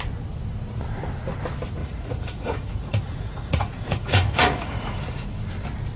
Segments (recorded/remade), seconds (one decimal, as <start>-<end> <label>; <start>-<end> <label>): 0.0-1.8 recorded; 1.8-5.3 remade; 5.3-6.0 recorded